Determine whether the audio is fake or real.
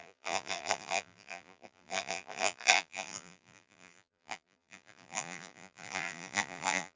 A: fake